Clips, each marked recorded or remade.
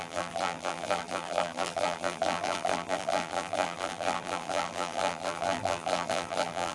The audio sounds remade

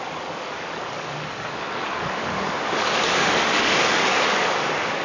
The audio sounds remade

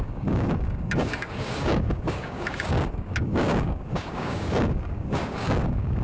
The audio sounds remade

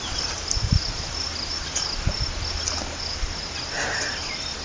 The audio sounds recorded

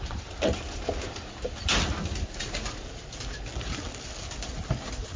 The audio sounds recorded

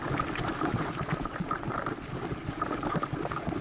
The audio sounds recorded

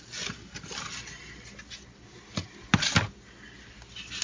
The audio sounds recorded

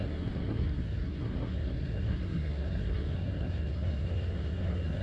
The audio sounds remade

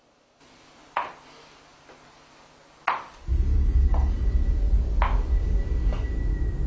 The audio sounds recorded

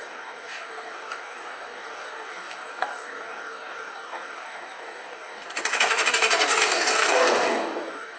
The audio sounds remade